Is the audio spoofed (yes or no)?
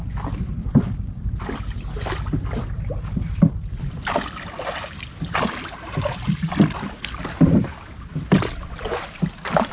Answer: no